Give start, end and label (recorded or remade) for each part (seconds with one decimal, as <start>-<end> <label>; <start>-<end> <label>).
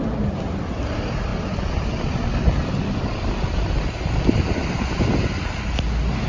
0.0-6.3 recorded